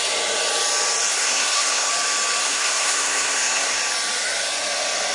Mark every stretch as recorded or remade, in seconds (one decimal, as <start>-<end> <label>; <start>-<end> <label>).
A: 0.0-1.1 recorded; 1.1-1.9 remade; 1.9-2.4 recorded; 2.4-3.8 remade; 3.8-5.1 recorded

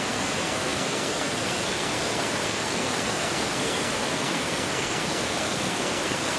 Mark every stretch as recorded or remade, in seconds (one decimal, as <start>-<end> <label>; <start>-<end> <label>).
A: 0.0-6.4 remade

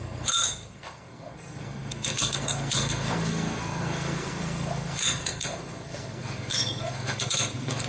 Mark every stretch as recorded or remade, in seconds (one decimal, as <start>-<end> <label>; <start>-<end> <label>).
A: 0.0-7.9 remade